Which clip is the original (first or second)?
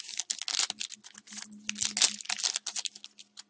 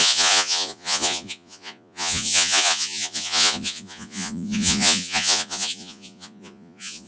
first